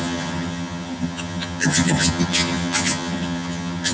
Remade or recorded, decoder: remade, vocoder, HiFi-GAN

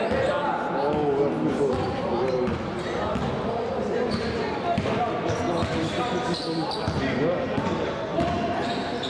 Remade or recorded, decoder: recorded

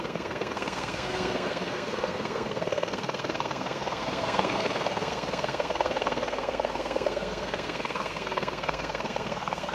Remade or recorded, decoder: remade, codec, SNAC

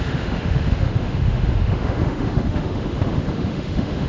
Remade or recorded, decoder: remade, autoencoder, DAC-VAE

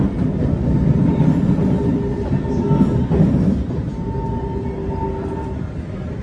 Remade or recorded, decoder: recorded